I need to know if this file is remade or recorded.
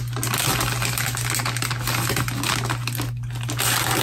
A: recorded